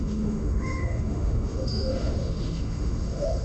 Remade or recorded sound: remade